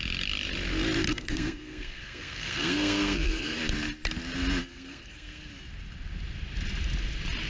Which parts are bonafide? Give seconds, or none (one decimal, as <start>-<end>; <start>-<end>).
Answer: 0.0-1.1; 3.6-4.6; 5.5-7.5